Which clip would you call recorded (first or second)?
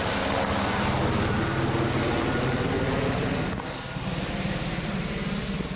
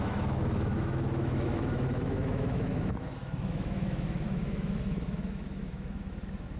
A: first